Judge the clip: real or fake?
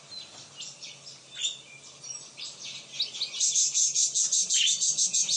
real